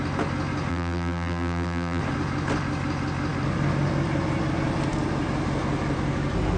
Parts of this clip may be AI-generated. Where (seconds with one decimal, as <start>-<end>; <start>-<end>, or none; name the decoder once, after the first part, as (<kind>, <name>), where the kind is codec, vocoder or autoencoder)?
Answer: 0.7-2.0 (vocoder, BigVGAN v2)